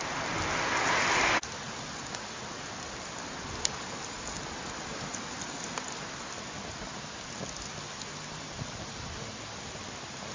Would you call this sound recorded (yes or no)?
yes